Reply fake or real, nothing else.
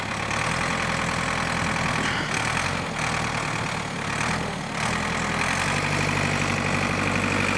real